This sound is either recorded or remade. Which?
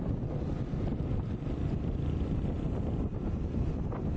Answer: recorded